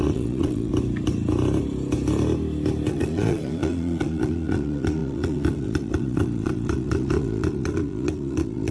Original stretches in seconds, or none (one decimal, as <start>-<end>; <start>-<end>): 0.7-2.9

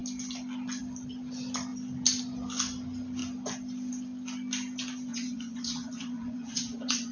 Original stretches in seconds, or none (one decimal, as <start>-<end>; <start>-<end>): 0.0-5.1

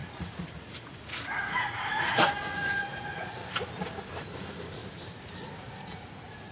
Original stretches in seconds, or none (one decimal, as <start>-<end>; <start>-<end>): 3.4-4.2; 4.8-5.4

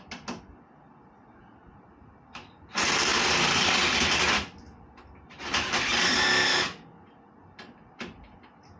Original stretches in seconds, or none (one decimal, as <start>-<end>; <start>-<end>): 0.0-8.8